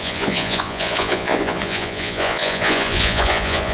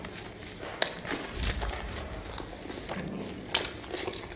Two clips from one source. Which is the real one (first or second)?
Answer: second